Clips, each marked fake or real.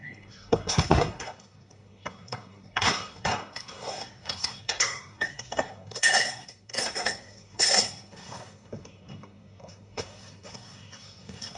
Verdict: fake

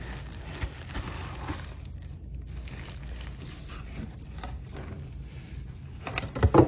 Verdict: real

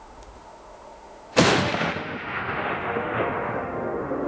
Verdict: fake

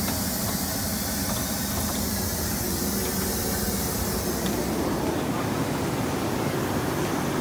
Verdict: real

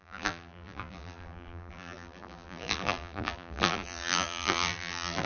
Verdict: fake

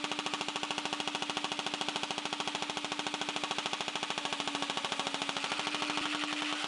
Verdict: real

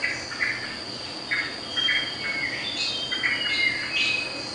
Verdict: real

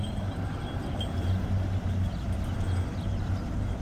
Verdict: real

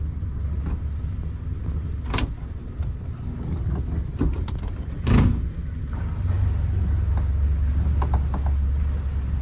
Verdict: real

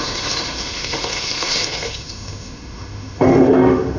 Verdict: fake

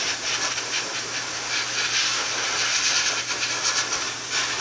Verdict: real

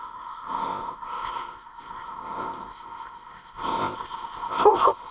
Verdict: fake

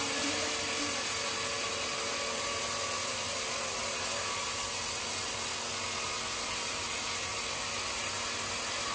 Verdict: real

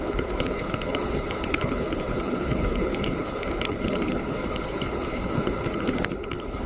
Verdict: fake